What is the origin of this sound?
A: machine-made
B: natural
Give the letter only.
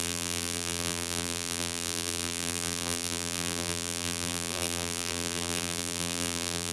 A